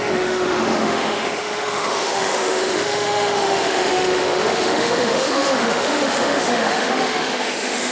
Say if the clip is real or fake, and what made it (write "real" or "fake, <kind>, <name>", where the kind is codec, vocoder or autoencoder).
fake, autoencoder, DAC-VAE